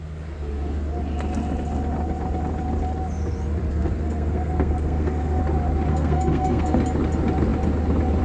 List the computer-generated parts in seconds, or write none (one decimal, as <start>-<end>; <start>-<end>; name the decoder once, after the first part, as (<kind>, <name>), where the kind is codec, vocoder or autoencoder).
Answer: 3.7-5.4 (codec, SNAC); 5.9-6.8